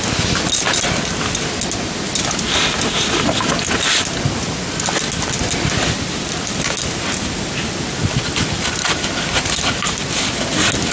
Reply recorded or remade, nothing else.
recorded